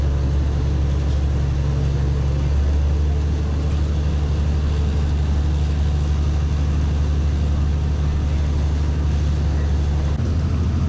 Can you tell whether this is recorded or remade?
recorded